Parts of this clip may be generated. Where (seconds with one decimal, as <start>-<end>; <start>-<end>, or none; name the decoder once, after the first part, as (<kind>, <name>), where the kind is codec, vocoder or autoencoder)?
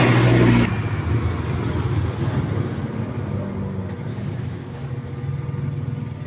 4.1-4.9 (codec, DAC)